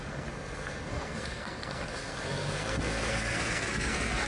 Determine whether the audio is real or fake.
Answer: fake